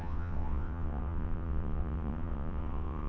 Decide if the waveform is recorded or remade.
remade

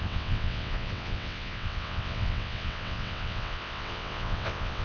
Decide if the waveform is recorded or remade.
remade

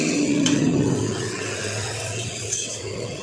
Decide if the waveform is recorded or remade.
remade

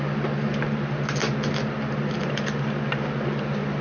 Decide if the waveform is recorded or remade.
recorded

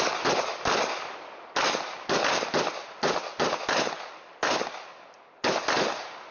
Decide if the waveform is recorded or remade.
recorded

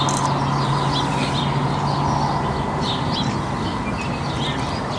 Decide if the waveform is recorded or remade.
recorded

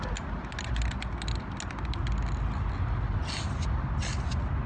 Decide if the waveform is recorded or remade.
recorded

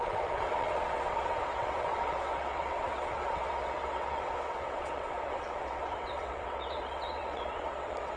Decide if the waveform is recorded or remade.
remade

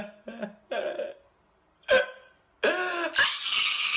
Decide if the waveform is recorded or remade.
recorded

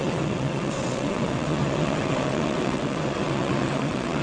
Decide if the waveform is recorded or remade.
remade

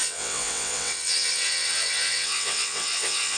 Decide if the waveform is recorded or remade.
remade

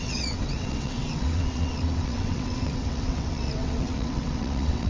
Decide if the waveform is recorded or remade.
remade